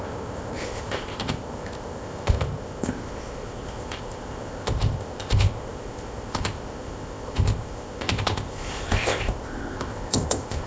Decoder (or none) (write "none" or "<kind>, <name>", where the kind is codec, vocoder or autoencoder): codec, ZipCodec